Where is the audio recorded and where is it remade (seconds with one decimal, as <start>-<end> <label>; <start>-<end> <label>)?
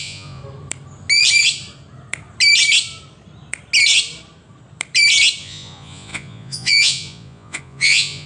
0.0-0.4 remade; 0.4-5.4 recorded; 5.4-8.3 remade